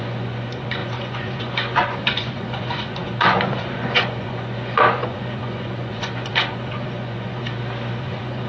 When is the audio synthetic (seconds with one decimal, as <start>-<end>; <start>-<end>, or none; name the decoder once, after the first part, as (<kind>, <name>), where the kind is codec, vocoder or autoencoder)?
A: 0.0-7.4 (vocoder, Vocos); 8.0-8.5